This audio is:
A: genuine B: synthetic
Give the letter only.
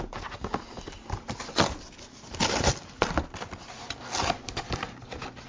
A